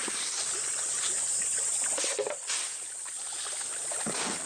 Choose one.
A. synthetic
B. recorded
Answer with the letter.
B